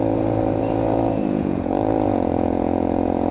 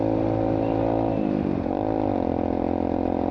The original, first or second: second